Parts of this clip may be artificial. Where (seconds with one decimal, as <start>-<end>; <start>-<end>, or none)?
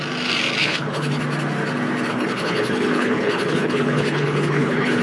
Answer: 0.6-1.2; 2.1-5.0